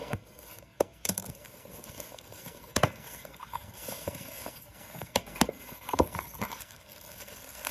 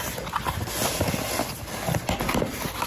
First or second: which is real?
second